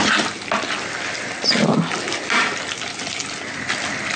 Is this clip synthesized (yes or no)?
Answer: no